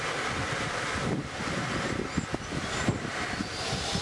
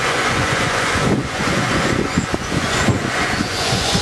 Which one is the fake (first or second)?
second